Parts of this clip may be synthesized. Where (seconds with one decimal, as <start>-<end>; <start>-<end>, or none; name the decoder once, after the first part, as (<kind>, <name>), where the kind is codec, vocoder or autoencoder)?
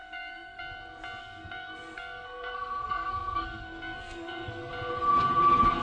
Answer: 0.0-0.6 (codec, SNAC); 1.2-4.7